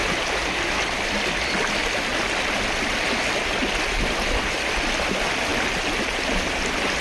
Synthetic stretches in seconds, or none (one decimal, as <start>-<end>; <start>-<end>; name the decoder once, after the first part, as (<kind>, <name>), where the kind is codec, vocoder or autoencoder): 0.0-1.9 (vocoder, BigVGAN v2)